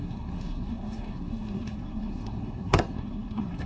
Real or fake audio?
fake